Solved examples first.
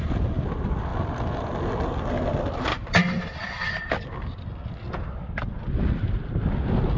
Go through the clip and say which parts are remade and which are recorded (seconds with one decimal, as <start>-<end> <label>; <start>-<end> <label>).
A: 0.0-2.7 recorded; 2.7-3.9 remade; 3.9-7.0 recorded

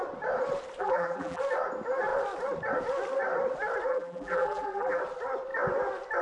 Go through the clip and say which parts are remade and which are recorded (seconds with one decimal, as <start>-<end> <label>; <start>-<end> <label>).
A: 0.0-0.8 recorded; 0.8-1.4 remade; 1.4-3.9 recorded; 3.9-5.0 remade; 5.0-6.2 recorded

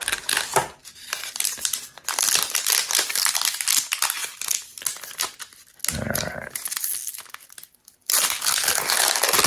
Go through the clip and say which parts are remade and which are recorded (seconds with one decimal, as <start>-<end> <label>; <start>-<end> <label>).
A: 0.0-0.8 recorded; 0.8-3.4 remade; 3.4-9.5 recorded

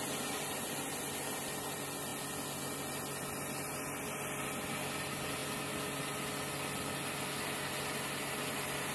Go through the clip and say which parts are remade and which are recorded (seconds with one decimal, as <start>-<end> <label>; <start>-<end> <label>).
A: 0.0-8.9 recorded

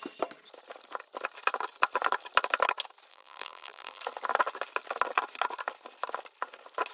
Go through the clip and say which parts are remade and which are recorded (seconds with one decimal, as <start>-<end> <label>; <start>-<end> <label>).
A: 0.0-3.1 recorded; 3.1-4.0 remade; 4.0-6.9 recorded

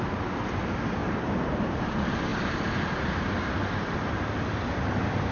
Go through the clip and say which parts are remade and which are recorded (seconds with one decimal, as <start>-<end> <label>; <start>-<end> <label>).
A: 0.0-1.0 recorded; 1.0-1.8 remade; 1.8-5.3 recorded

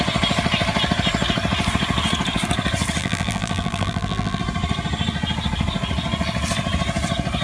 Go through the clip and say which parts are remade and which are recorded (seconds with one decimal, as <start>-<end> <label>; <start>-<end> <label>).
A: 0.0-3.0 recorded; 3.0-4.4 remade; 4.4-7.4 recorded

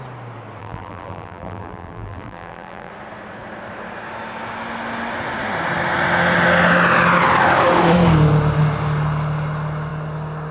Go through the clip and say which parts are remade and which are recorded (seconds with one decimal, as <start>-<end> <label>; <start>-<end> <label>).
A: 0.0-0.6 recorded; 0.6-2.9 remade; 2.9-10.5 recorded